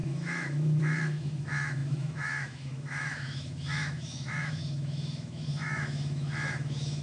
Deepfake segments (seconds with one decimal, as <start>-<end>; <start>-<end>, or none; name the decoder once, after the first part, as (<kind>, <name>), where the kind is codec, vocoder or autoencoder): 0.0-7.0 (autoencoder, DAC-VAE)